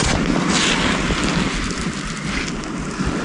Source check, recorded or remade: recorded